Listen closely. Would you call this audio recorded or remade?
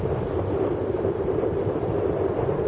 recorded